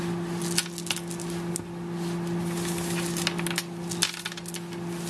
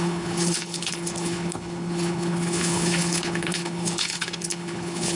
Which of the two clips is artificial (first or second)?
second